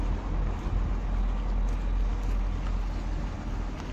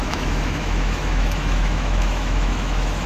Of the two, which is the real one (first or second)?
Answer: first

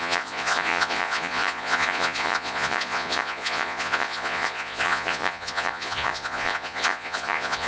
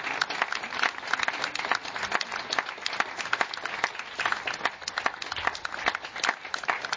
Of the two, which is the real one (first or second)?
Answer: second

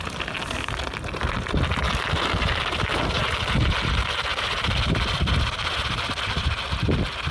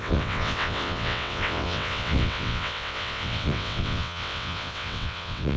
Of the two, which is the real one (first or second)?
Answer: first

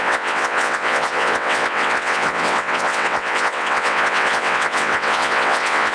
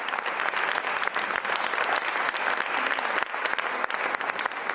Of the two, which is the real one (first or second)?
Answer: second